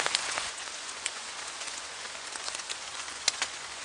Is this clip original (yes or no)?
no